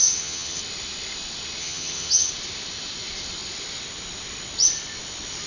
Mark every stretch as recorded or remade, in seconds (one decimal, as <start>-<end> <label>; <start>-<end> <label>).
0.0-0.6 remade; 0.6-1.6 recorded; 1.6-2.3 remade; 2.3-5.5 recorded